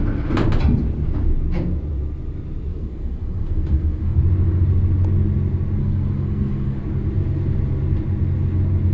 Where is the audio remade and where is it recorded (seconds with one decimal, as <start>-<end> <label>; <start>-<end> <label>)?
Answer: 0.0-2.7 recorded; 2.7-4.2 remade; 4.2-5.8 recorded; 5.8-6.8 remade; 6.8-8.9 recorded